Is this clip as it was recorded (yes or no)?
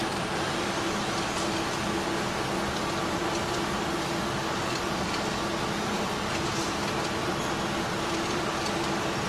yes